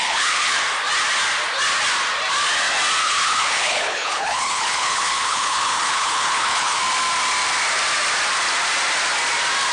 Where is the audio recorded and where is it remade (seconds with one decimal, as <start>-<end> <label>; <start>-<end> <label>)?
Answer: 0.0-0.6 remade; 0.6-3.0 recorded; 3.0-6.8 remade; 6.8-9.7 recorded